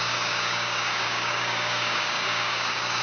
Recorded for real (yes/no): no